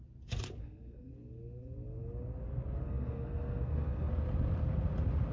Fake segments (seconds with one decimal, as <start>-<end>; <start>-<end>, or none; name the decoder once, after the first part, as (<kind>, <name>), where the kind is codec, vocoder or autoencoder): 0.6-1.1 (codec, SNAC); 2.8-4.1